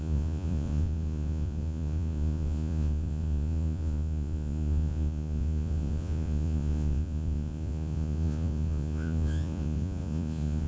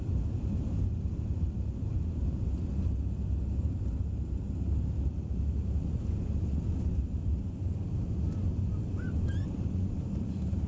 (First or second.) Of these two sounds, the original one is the second